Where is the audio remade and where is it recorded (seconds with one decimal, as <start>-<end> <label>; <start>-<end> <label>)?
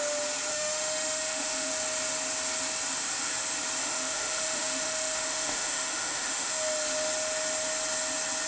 0.0-0.5 recorded; 0.5-1.7 remade; 1.7-3.8 recorded; 3.8-6.5 remade; 6.5-8.5 recorded